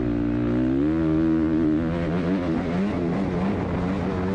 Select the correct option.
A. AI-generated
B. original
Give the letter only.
B